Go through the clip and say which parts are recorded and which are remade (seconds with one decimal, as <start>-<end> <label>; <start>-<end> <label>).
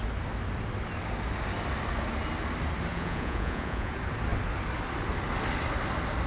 0.0-2.9 recorded; 2.9-3.9 remade; 3.9-6.3 recorded